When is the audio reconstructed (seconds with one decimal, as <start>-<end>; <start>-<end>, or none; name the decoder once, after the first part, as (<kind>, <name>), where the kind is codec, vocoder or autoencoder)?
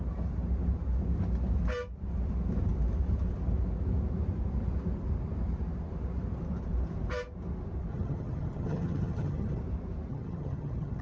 7.9-9.6 (vocoder, HiFi-GAN); 10.1-11.0